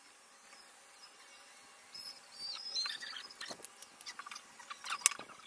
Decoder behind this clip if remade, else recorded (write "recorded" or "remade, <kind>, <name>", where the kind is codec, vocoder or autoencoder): recorded